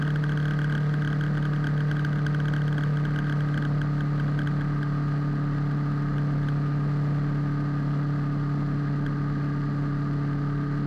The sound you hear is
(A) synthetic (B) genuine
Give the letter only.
B